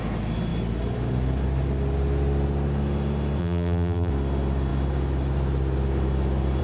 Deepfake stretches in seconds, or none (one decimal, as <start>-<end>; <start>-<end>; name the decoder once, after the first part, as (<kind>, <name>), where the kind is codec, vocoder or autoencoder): 3.4-4.1 (vocoder, BigVGAN v2)